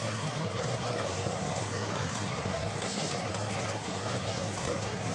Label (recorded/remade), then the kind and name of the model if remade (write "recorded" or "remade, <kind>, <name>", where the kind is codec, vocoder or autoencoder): remade, codec, SNAC